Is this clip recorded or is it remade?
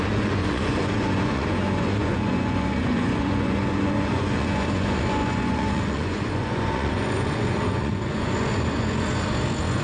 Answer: remade